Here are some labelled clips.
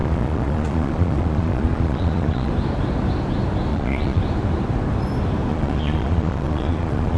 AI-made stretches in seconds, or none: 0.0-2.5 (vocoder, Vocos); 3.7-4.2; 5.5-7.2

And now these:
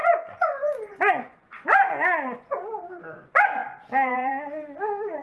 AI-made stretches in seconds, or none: 0.0-5.2 (vocoder, Vocos)

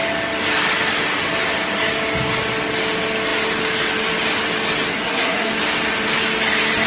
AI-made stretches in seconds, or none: 4.9-5.5 (codec, SNAC)

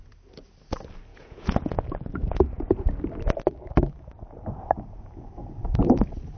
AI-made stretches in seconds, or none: 1.1-1.8 (vocoder, Vocos); 2.2-3.0

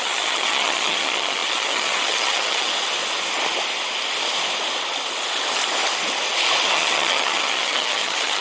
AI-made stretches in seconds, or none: 0.0-2.7 (vocoder, HiFi-GAN); 6.7-8.4

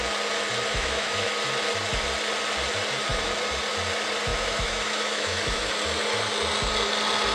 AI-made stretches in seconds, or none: 0.7-1.3 (autoencoder, DAC-VAE); 4.3-5.7